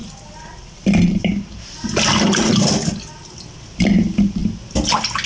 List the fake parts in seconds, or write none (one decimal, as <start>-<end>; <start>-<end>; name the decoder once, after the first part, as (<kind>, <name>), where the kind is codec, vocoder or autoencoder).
none